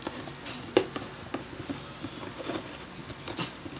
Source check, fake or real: real